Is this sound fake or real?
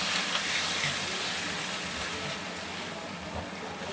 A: real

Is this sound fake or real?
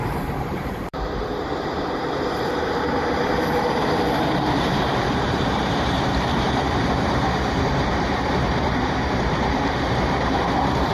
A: fake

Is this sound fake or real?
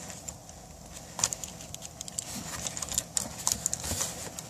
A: real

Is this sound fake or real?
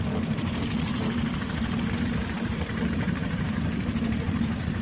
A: fake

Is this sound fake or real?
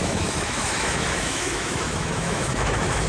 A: fake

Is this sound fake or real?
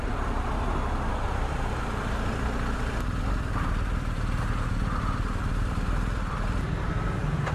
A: fake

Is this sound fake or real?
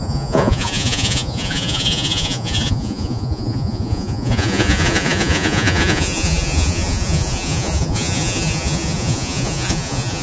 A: fake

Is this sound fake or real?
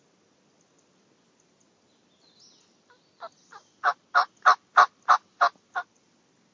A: real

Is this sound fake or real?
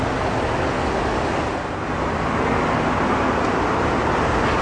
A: real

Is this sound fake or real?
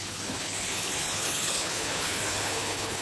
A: fake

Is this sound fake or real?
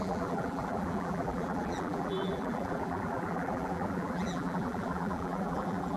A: fake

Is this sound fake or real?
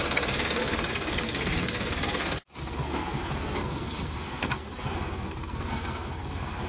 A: fake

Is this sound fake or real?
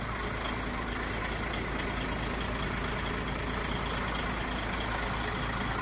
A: real